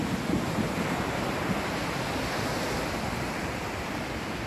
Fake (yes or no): no